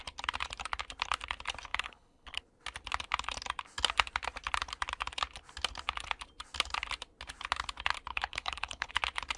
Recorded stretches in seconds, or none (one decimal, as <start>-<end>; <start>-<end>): 0.0-1.7; 2.4-8.1; 8.9-9.4